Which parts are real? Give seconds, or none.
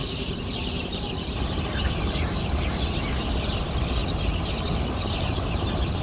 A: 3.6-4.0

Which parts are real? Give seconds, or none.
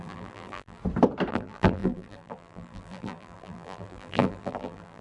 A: 0.8-1.3